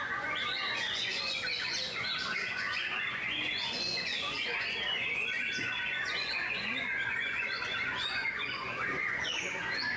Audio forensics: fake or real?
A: fake